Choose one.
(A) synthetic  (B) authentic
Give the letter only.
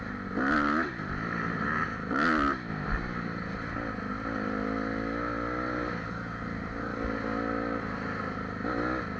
B